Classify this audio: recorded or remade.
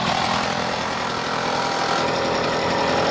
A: recorded